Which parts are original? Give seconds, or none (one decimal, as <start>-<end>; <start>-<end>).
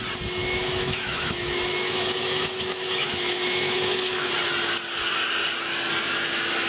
0.0-0.4; 4.3-6.7